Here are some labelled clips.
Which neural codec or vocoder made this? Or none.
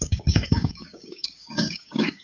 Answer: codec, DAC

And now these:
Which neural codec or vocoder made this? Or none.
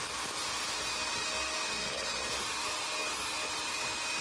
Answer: none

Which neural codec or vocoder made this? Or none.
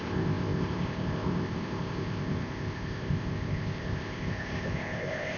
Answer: codec, ZipCodec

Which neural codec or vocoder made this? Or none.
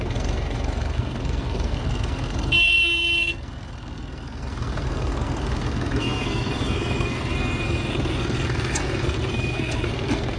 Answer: codec, SNAC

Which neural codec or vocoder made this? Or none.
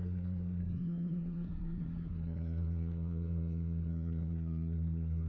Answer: codec, SNAC